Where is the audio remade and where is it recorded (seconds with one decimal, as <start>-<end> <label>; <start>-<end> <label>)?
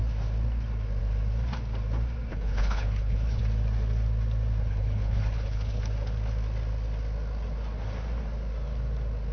0.0-2.3 recorded; 2.3-3.4 remade; 3.4-4.6 recorded; 4.6-5.8 remade; 5.8-9.3 recorded